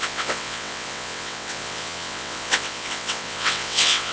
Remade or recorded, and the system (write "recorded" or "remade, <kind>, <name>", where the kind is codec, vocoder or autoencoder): remade, vocoder, WaveNeXt